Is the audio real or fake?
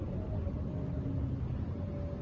real